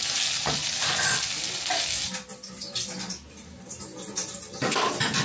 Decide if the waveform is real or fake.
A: real